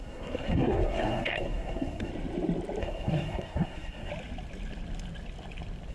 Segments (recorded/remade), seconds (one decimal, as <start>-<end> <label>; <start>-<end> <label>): 0.0-2.1 remade; 2.1-2.8 recorded; 2.8-4.1 remade; 4.1-5.9 recorded